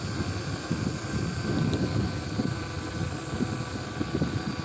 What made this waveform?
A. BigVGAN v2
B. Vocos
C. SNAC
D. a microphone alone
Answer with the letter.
D